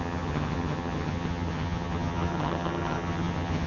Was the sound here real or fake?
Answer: fake